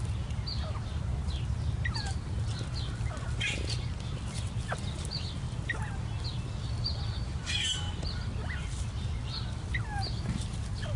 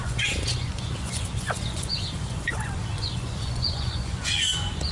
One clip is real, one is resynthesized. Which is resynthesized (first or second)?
second